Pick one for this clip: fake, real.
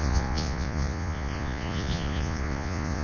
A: fake